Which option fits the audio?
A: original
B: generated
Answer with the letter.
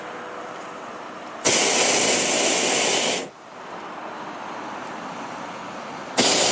A